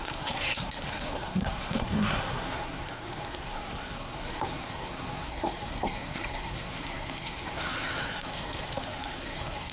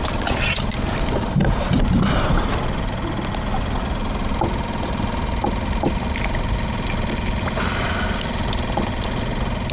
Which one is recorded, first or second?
second